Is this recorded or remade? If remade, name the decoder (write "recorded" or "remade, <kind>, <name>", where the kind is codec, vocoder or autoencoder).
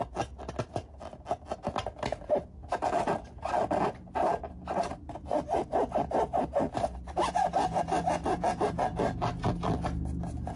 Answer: recorded